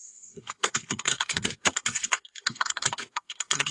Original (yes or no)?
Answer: no